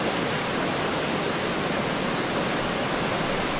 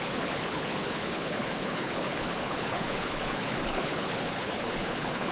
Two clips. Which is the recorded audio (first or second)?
first